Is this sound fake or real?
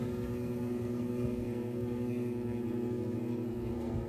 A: fake